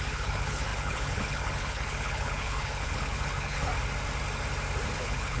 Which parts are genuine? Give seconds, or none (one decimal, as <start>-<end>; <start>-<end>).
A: 3.7-4.9